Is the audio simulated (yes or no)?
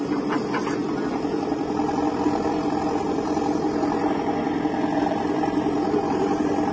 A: no